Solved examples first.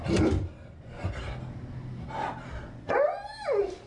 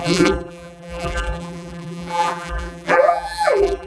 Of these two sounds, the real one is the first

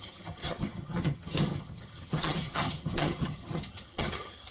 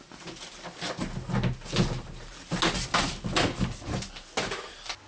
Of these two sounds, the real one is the second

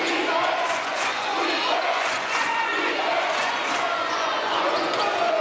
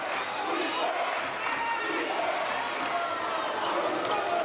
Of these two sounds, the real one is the second